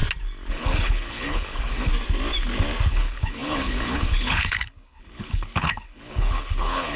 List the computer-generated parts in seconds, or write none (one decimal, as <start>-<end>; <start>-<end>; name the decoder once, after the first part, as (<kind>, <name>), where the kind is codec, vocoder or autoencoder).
0.5-1.9 (codec, HILCodec); 2.9-7.0